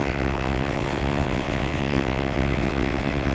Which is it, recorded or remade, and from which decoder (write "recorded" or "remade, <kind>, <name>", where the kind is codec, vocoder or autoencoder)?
remade, vocoder, WaveNeXt